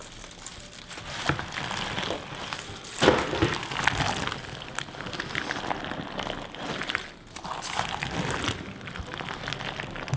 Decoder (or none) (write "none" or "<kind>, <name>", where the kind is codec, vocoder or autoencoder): none